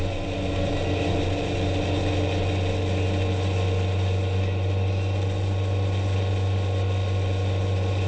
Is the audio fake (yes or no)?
no